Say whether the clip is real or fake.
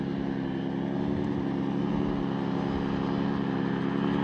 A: real